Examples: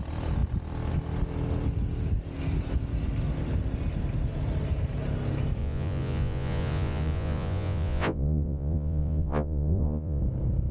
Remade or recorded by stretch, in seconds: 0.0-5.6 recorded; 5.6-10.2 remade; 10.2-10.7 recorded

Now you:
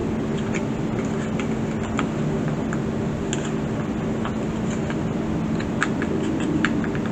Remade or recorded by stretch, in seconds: 0.0-7.1 recorded

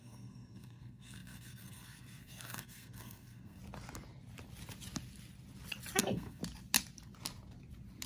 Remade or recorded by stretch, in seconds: 0.0-3.6 remade; 3.6-6.0 recorded; 6.0-6.4 remade; 6.4-8.1 recorded

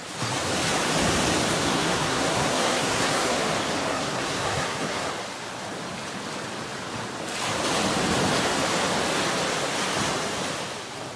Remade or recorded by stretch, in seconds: 0.0-1.5 recorded; 1.5-3.4 remade; 3.4-3.9 recorded; 3.9-5.1 remade; 5.1-11.2 recorded

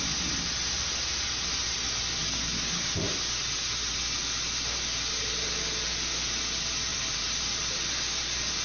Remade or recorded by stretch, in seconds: 0.0-6.9 recorded; 6.9-7.8 remade; 7.8-8.6 recorded

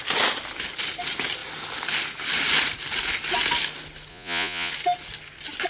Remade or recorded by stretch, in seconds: 0.0-4.1 recorded; 4.1-4.7 remade; 4.7-5.7 recorded

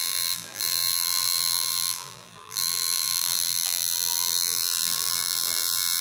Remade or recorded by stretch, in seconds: 0.0-6.0 remade

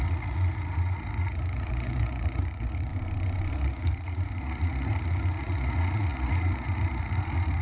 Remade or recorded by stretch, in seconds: 0.0-2.9 remade; 2.9-3.5 recorded; 3.5-7.6 remade